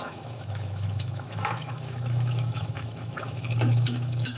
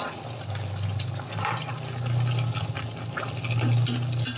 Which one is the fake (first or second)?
first